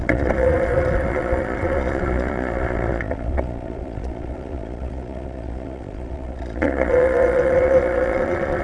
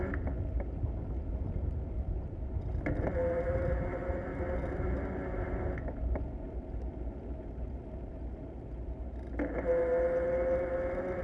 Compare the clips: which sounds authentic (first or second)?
second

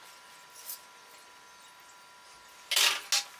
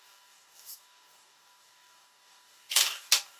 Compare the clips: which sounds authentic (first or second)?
first